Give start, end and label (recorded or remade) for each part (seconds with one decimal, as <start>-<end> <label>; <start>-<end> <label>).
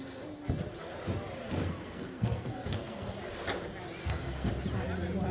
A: 0.0-1.6 recorded; 1.6-3.1 remade; 3.1-4.0 recorded; 4.0-4.5 remade; 4.5-5.3 recorded